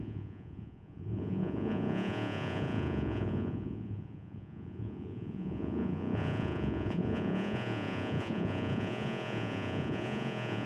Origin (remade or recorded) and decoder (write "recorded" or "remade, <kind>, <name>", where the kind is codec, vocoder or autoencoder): remade, vocoder, Vocos